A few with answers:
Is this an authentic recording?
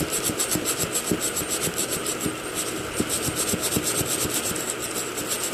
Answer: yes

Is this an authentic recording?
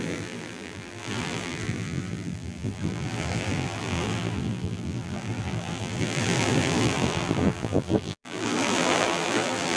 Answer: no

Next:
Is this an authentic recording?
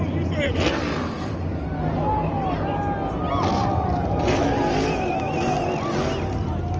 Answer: yes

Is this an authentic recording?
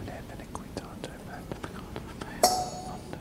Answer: no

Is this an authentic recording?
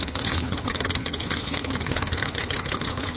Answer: no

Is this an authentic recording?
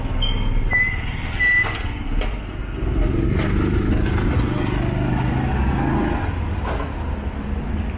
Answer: yes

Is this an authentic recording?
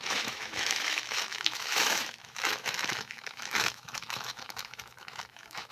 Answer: no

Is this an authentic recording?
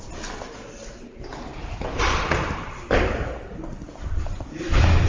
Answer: yes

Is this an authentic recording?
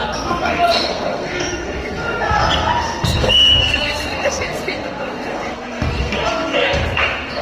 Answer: no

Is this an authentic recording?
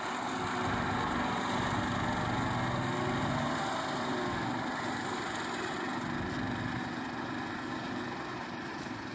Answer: yes